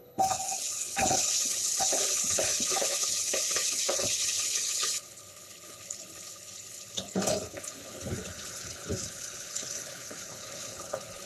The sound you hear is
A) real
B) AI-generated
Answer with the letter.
B